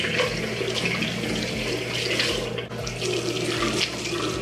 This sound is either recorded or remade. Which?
recorded